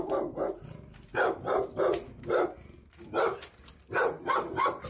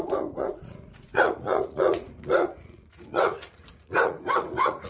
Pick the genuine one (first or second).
first